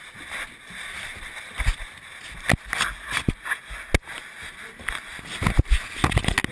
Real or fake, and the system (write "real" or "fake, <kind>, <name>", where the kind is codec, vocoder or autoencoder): real